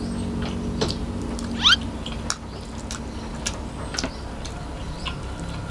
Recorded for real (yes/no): yes